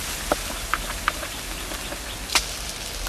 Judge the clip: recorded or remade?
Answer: recorded